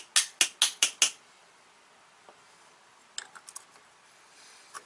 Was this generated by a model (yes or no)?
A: no